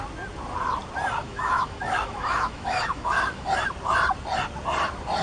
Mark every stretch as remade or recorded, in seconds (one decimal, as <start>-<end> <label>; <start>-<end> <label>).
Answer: 0.0-1.2 recorded; 1.2-3.5 remade; 3.5-5.2 recorded